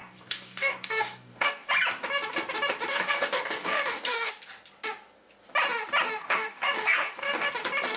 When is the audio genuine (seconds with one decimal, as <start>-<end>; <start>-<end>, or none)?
1.7-2.9; 4.3-6.2; 7.5-8.0